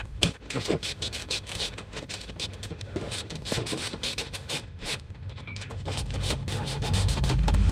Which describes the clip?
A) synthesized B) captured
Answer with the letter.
A